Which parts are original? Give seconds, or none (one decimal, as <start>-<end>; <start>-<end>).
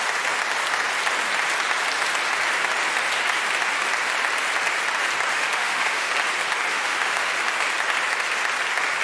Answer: 0.0-5.3; 6.1-6.7; 7.3-9.0